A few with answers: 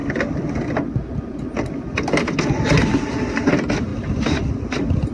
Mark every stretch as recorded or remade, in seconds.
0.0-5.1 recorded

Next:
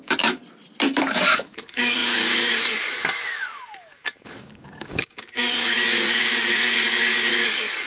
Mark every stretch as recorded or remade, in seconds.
0.0-0.4 remade; 0.4-1.0 recorded; 1.0-7.9 remade

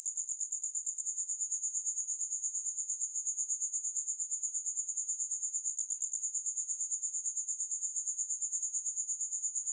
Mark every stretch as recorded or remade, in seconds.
0.0-1.0 recorded; 1.0-5.7 remade; 5.7-6.2 recorded; 6.2-9.7 remade

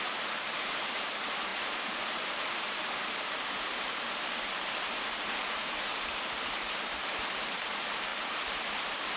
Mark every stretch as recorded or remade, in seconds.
0.0-9.2 remade

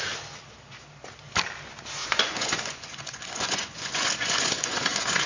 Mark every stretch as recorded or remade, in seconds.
0.0-2.0 recorded; 2.0-5.3 remade

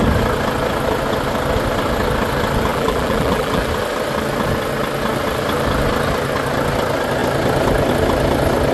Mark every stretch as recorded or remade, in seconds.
0.0-2.7 recorded; 2.7-3.7 remade; 3.7-8.7 recorded

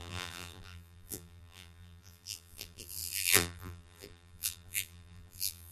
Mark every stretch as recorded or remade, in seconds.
0.0-5.7 remade